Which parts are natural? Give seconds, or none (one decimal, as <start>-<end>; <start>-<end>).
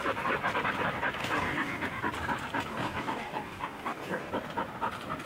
0.0-1.2; 2.0-2.7; 4.3-5.3